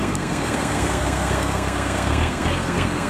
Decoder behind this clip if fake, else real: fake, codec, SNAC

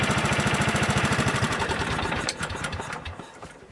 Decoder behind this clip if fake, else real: fake, vocoder, BigVGAN v2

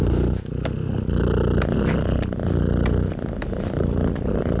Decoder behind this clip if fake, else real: real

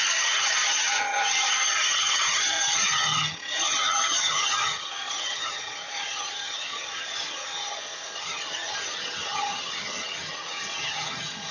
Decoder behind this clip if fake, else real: fake, vocoder, HiFi-GAN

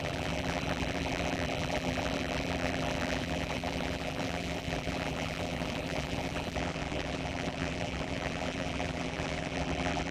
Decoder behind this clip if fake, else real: fake, vocoder, BigVGAN v2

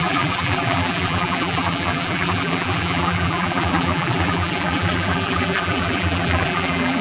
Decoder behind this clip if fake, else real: fake, vocoder, BigVGAN v2